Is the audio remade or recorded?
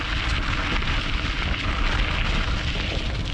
recorded